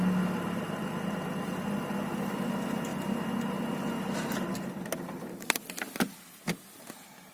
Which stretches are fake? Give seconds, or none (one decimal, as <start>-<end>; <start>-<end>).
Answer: none